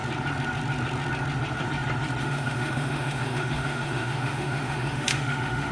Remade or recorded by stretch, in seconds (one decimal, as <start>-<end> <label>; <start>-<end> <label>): 0.0-2.2 recorded; 2.2-5.7 remade